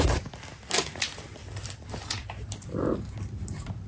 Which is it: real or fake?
real